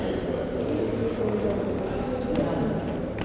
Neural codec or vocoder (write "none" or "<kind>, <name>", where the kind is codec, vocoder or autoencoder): none